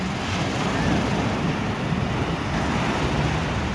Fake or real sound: real